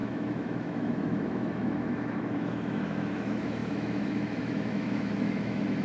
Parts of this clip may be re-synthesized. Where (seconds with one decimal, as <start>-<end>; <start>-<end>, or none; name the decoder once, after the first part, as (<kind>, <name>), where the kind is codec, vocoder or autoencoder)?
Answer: 0.0-5.8 (autoencoder, DAC-VAE)